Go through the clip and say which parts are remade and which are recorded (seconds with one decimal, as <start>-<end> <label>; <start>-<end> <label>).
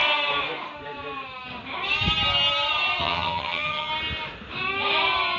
0.0-3.0 recorded; 3.0-3.9 remade; 3.9-5.4 recorded